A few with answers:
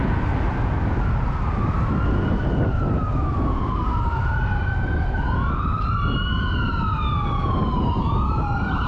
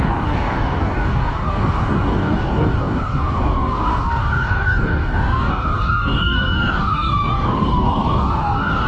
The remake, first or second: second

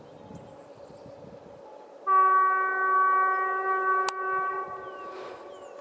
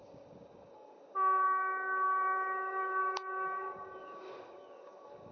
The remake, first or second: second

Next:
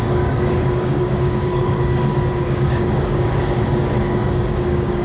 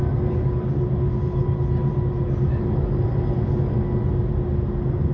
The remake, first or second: first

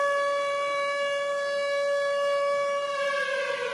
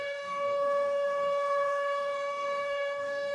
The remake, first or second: second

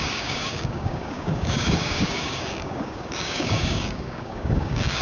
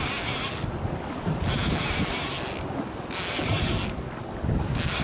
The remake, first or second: first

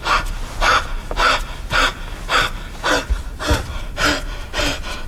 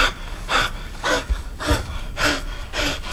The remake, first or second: second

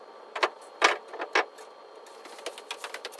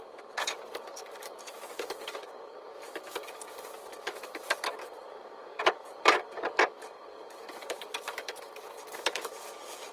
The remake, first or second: second